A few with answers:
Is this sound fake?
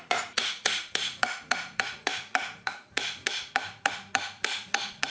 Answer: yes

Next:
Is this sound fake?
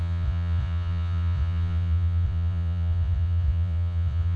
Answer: yes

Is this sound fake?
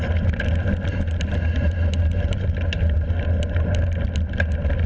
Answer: no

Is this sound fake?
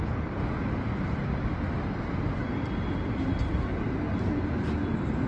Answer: no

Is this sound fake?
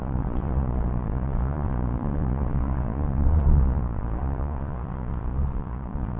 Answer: yes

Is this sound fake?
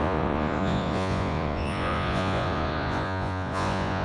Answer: yes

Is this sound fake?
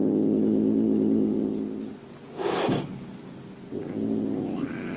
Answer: no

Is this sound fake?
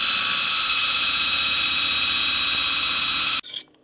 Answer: no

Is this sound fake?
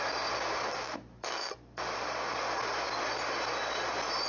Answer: no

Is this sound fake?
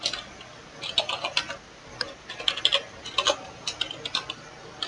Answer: no